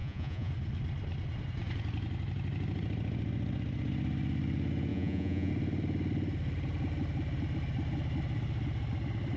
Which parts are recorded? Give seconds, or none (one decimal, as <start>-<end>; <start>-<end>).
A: 0.5-4.9; 5.5-9.4